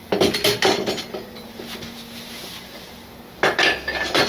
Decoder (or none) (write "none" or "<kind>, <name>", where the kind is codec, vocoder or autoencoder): none